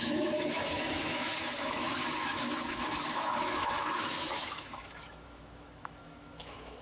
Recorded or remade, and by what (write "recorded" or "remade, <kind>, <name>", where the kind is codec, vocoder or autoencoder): remade, autoencoder, DAC-VAE